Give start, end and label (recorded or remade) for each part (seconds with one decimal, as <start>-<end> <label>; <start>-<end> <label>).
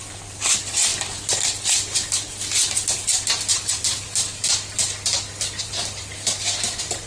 0.0-7.1 recorded